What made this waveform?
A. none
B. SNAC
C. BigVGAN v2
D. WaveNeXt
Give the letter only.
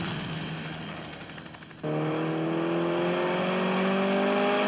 A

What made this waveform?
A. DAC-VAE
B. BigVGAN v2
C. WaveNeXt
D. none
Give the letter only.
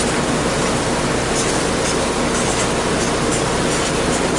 D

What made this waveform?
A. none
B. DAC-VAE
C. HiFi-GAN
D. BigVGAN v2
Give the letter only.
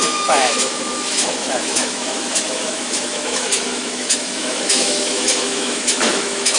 B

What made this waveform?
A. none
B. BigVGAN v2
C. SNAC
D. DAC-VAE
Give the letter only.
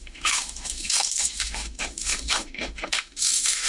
D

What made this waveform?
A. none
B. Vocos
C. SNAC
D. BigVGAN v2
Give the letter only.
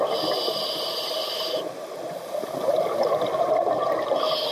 A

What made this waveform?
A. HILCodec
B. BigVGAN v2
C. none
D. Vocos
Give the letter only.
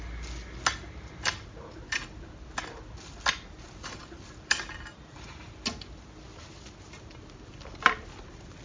C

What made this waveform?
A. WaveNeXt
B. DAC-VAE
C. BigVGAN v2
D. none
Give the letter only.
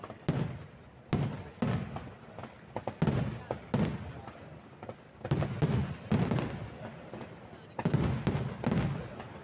D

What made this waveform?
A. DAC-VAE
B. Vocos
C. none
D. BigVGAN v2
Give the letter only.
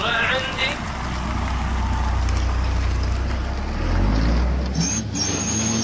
C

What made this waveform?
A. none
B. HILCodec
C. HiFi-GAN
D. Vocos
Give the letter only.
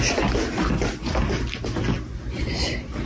A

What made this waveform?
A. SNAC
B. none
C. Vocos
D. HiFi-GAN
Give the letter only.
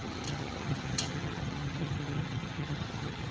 D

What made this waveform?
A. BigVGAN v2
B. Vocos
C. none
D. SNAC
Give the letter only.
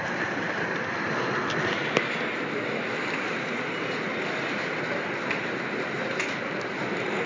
C